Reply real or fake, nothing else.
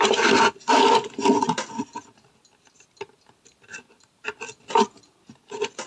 real